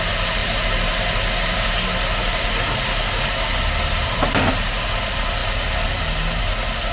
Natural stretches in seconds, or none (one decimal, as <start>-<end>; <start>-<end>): 0.0-6.9